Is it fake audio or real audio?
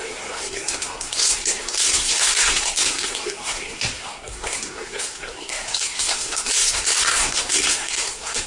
fake